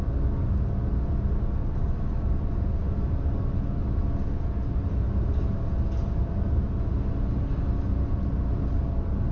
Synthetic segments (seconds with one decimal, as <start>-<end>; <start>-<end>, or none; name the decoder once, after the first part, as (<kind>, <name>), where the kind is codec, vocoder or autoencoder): none